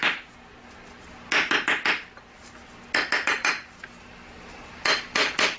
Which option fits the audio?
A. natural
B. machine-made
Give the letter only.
A